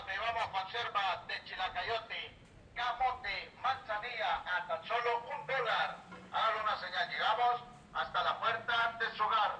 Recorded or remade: recorded